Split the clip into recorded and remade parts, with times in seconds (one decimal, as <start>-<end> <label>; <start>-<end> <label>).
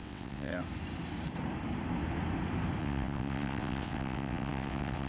0.0-0.5 remade; 0.5-2.8 recorded; 2.8-5.1 remade